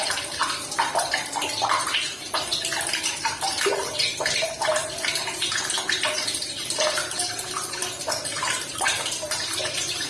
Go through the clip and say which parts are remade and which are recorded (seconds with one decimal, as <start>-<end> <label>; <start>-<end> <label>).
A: 0.0-2.5 remade; 2.5-3.2 recorded; 3.2-10.1 remade

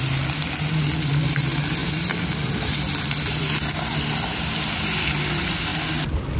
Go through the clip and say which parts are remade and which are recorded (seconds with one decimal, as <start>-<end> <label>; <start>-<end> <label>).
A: 0.0-1.8 remade; 1.8-3.4 recorded; 3.4-5.7 remade; 5.7-6.4 recorded

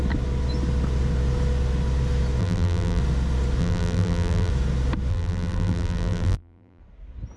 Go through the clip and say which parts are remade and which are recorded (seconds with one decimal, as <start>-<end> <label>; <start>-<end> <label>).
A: 0.0-2.4 recorded; 2.4-3.0 remade; 3.0-3.6 recorded; 3.6-4.5 remade; 4.5-5.1 recorded; 5.1-6.8 remade; 6.8-7.4 recorded

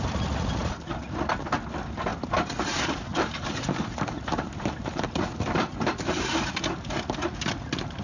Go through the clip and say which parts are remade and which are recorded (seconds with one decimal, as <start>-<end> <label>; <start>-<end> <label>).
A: 0.0-0.6 recorded; 0.6-1.2 remade; 1.2-3.1 recorded; 3.1-6.5 remade; 6.5-8.0 recorded

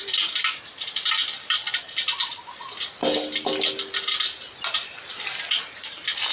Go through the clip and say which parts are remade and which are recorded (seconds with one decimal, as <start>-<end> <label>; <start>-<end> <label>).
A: 0.0-1.6 remade; 1.6-5.4 recorded; 5.4-6.3 remade

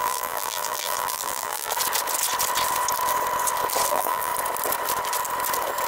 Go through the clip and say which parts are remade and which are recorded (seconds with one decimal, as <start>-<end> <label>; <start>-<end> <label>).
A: 0.0-1.7 remade; 1.7-3.9 recorded; 3.9-4.3 remade; 4.3-5.9 recorded

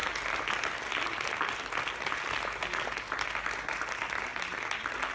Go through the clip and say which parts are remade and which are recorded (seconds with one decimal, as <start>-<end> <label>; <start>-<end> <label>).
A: 0.0-5.1 recorded